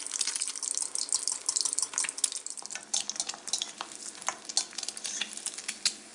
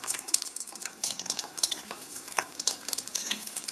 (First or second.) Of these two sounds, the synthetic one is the second